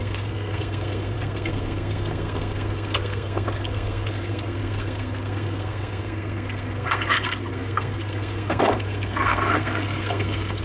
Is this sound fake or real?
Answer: fake